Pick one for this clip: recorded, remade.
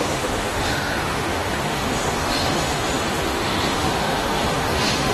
remade